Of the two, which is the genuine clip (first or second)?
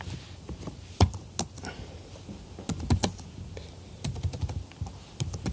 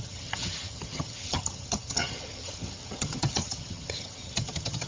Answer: first